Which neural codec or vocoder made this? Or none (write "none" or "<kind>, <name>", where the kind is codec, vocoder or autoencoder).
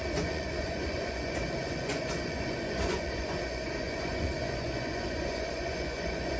vocoder, Vocos